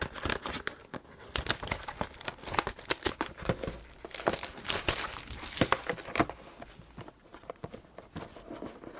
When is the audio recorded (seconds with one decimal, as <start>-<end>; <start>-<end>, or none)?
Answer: 0.0-7.2; 7.7-9.0